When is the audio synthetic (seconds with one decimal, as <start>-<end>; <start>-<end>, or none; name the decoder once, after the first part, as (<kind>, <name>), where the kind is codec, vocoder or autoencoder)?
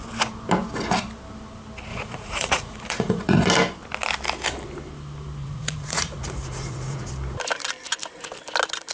1.9-3.5 (vocoder, Vocos); 5.4-7.1